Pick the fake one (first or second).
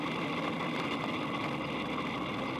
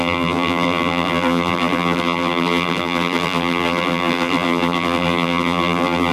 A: second